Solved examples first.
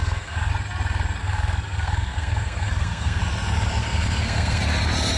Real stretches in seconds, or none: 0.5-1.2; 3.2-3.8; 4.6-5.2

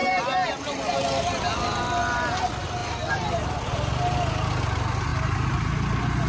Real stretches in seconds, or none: 0.0-6.3

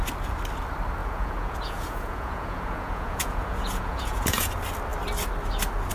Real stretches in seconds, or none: 0.0-1.0; 4.5-5.9

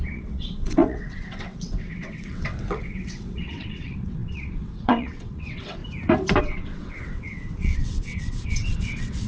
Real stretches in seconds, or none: 5.8-6.4